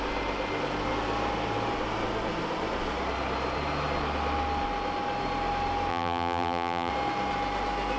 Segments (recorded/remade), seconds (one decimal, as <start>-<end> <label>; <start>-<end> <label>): 0.0-5.9 recorded; 5.9-6.9 remade; 6.9-8.0 recorded